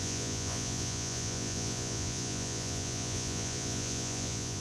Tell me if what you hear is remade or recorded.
remade